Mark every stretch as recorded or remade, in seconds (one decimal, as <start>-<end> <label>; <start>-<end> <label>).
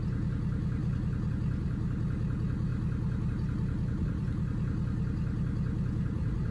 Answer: 0.0-6.5 recorded